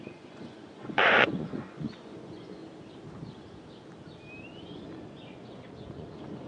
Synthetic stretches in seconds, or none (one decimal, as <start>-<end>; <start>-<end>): 0.0-2.6; 4.4-6.5